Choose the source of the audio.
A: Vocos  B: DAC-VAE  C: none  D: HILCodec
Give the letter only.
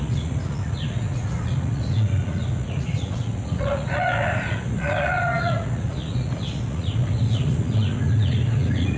A